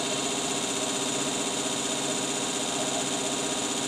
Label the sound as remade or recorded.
recorded